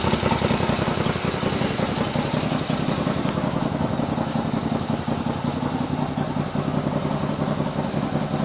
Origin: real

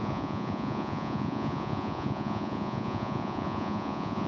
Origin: fake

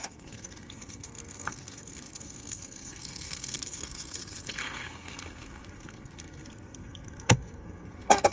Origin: fake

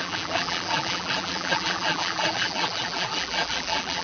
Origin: fake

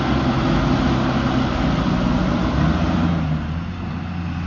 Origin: real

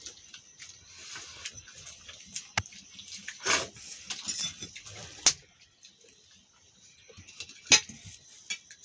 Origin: real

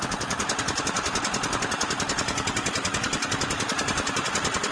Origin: real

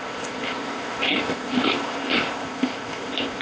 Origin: fake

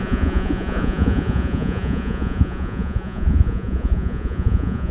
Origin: fake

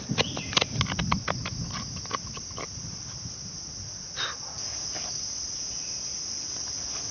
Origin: real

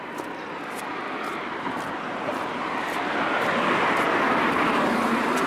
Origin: real